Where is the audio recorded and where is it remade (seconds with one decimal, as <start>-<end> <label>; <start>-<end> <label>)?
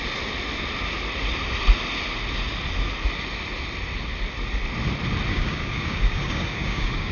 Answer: 0.0-5.3 recorded; 5.3-7.1 remade